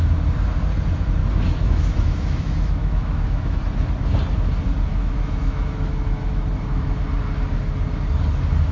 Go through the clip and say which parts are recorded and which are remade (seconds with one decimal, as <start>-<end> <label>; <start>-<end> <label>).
0.0-1.2 recorded; 1.2-3.6 remade; 3.6-4.9 recorded; 4.9-7.0 remade; 7.0-8.7 recorded

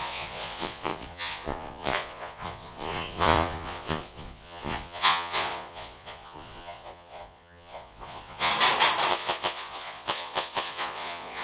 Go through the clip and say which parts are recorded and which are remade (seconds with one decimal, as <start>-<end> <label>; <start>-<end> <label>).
0.0-8.5 remade; 8.5-9.1 recorded; 9.1-11.4 remade